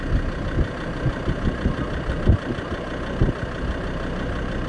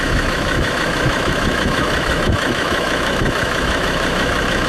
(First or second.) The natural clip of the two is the first